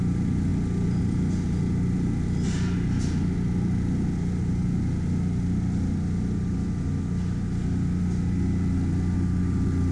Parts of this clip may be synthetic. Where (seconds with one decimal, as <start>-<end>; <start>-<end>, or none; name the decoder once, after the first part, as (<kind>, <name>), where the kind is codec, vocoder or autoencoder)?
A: none